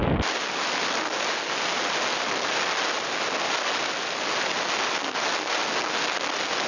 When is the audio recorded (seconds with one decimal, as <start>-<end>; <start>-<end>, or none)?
0.0-6.7